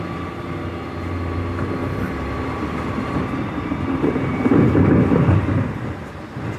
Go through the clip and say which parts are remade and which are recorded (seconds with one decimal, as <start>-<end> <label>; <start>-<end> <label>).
0.0-1.8 recorded; 1.8-5.8 remade; 5.8-6.6 recorded